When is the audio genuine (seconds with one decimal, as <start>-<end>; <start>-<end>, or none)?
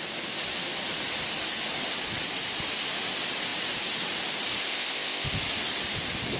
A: 0.0-4.6; 5.4-6.4